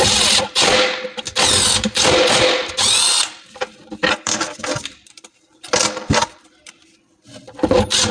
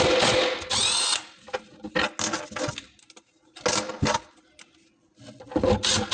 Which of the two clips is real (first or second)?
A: second